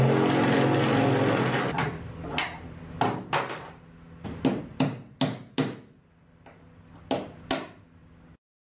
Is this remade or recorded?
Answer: recorded